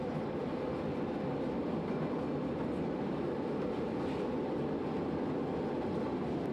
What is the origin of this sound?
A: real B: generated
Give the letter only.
A